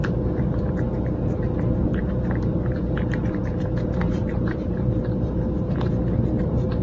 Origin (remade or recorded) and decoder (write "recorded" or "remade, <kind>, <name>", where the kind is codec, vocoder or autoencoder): remade, vocoder, BigVGAN v2